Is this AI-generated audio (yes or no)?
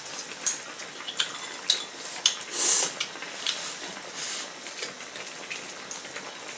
no